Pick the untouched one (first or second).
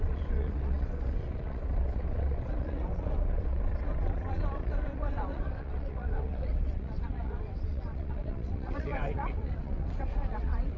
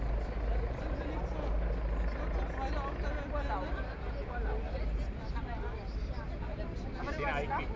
second